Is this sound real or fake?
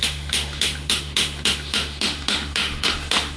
fake